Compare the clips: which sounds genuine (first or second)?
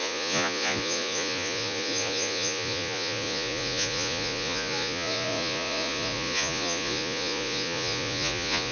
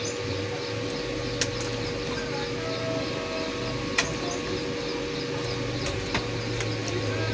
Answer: second